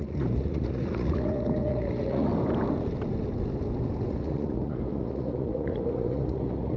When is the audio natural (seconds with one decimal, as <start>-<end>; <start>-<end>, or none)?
2.3-4.1